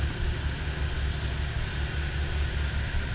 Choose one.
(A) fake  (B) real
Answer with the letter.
B